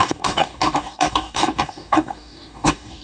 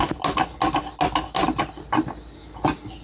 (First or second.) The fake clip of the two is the first